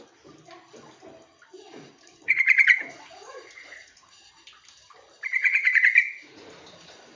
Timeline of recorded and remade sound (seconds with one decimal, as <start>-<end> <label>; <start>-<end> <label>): 0.0-1.7 recorded; 1.7-4.3 remade; 4.3-5.3 recorded; 5.3-6.5 remade; 6.5-7.2 recorded